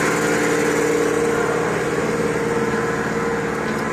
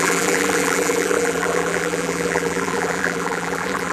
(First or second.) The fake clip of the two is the second